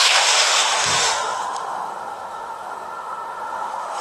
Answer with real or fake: fake